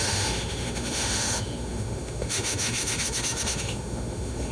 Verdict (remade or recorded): remade